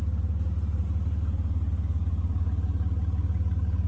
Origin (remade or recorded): recorded